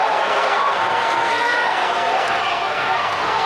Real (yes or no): no